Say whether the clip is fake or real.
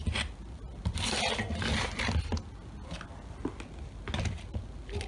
real